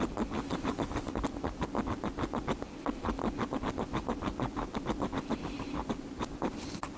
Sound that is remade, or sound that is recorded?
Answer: recorded